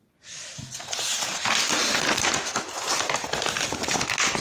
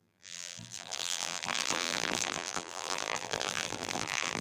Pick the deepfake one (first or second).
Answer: second